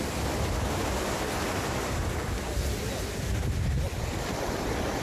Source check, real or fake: real